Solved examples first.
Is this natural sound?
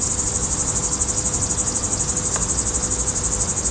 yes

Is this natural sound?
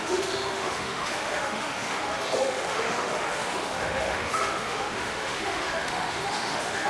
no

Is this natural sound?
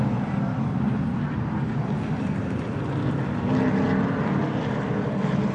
yes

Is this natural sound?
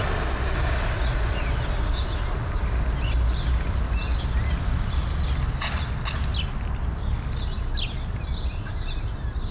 yes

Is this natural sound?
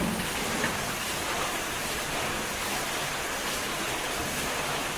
yes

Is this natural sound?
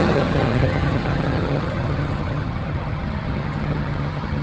no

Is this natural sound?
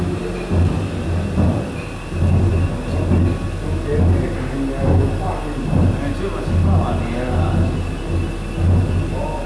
yes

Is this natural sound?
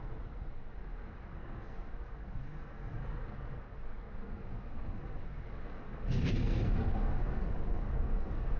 no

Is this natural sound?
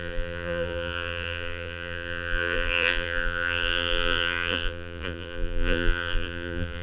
no